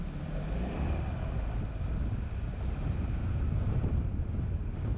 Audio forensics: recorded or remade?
recorded